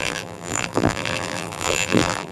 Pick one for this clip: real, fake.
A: fake